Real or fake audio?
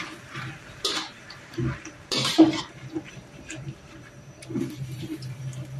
fake